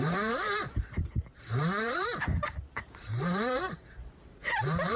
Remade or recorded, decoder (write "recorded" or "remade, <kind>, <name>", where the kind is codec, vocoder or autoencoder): remade, vocoder, BigVGAN v2